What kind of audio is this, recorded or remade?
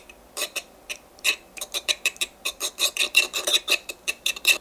remade